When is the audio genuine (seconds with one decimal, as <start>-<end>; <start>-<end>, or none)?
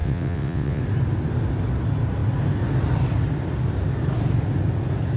0.8-5.2